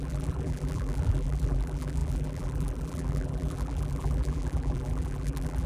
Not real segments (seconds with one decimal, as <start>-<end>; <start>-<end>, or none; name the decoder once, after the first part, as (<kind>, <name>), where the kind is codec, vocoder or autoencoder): 0.0-5.7 (vocoder, BigVGAN v2)

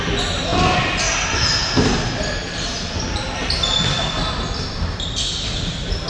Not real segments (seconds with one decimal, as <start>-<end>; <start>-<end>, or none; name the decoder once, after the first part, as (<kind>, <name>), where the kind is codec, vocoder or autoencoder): none

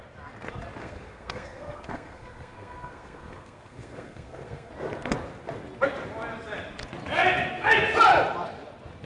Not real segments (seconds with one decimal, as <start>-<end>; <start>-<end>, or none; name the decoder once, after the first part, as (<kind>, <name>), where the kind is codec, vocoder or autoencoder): 0.8-4.7 (codec, SNAC)

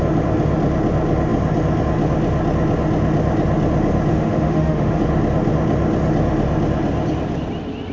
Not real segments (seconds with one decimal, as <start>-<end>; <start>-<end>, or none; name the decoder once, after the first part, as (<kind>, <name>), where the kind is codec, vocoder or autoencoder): 4.1-5.0 (autoencoder, DAC-VAE)

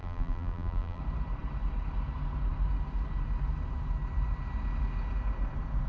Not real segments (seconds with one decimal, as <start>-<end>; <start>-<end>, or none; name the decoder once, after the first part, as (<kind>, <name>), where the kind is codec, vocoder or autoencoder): 0.0-1.0 (vocoder, BigVGAN v2)

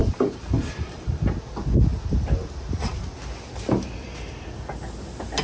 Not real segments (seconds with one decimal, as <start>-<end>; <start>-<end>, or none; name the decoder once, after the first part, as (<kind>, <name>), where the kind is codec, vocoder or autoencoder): 0.0-1.3 (vocoder, BigVGAN v2)

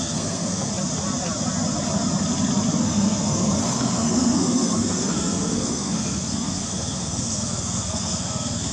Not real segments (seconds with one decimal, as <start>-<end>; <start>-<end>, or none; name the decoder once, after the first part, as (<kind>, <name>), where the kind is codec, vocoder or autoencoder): 0.0-0.7 (codec, SNAC); 2.8-8.7